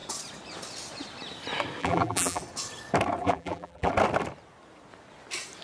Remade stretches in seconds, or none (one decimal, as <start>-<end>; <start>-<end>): 1.8-2.4; 3.2-3.9